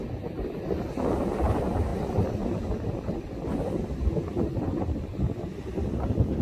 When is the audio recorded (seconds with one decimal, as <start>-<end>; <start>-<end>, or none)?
0.0-1.9; 5.7-6.4